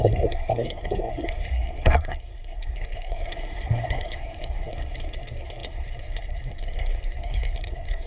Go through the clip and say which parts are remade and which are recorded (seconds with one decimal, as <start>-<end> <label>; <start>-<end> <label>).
0.0-8.1 remade